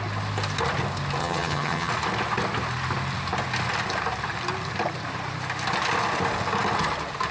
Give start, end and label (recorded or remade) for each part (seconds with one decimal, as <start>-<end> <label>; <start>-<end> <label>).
0.0-1.2 recorded; 1.2-1.9 remade; 1.9-7.3 recorded